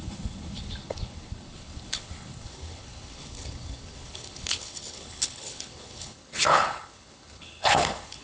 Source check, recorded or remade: remade